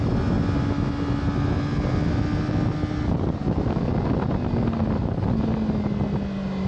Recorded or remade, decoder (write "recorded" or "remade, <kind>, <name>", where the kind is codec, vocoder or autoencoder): recorded